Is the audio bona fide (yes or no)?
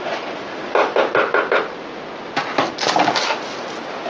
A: yes